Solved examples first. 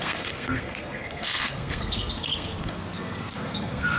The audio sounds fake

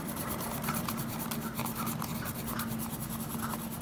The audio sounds real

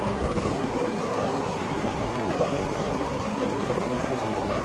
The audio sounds fake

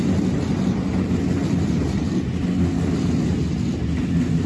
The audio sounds real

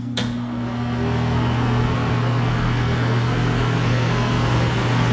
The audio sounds fake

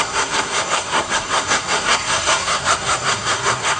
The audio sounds fake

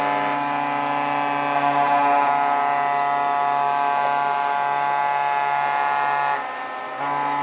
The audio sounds real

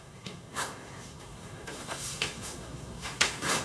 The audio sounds fake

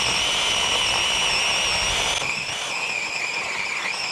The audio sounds real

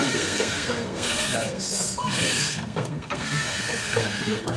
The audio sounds fake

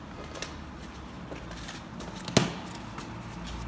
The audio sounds real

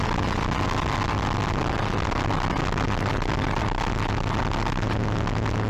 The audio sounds real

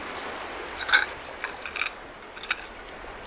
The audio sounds real